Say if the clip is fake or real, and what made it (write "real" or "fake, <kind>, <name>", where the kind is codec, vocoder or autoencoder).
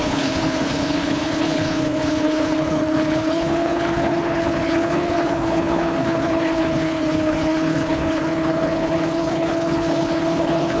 fake, codec, HILCodec